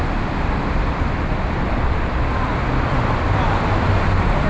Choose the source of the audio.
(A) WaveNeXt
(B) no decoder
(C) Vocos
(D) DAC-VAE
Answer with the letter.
B